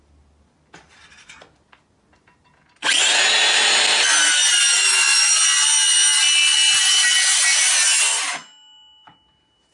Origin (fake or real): real